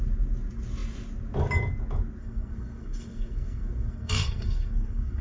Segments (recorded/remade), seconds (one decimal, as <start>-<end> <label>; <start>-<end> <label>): 0.0-2.2 recorded; 2.2-5.2 remade